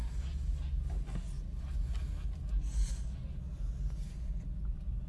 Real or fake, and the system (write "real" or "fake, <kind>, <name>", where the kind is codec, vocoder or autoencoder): real